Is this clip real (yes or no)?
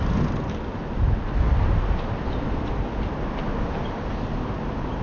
yes